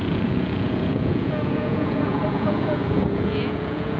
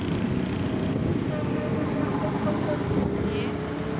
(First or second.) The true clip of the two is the second